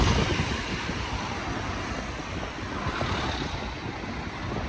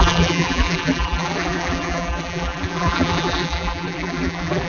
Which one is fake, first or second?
second